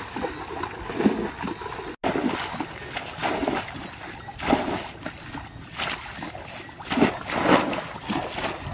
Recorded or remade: recorded